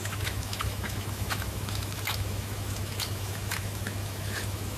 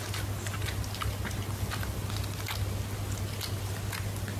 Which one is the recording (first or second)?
second